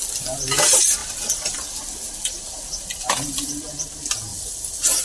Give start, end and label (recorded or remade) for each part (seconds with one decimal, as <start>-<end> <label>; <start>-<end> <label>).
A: 0.0-5.0 recorded